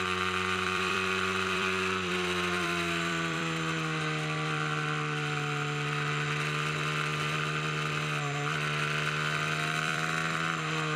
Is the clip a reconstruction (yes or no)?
yes